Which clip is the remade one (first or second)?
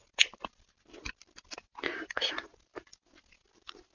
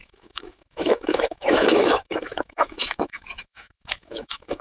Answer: second